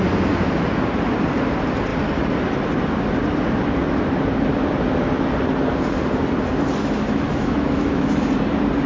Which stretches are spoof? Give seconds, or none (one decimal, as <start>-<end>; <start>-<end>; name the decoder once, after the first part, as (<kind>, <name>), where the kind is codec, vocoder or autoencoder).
6.8-8.3 (autoencoder, DAC-VAE)